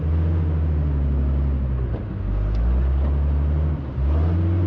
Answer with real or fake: real